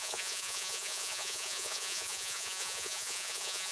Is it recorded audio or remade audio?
remade